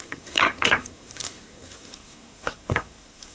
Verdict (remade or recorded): remade